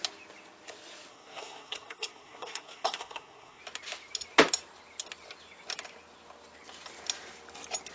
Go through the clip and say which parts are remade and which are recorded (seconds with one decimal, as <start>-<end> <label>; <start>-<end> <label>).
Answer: 0.0-1.1 recorded; 1.1-3.6 remade; 3.6-7.9 recorded